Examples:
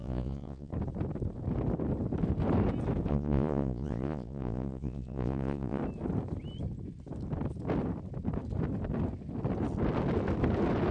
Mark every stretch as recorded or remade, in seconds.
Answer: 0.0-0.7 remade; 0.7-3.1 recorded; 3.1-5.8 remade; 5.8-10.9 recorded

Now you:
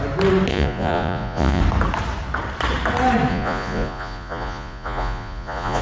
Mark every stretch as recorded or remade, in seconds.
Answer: 0.0-0.5 recorded; 0.5-1.6 remade; 1.6-3.3 recorded; 3.3-5.8 remade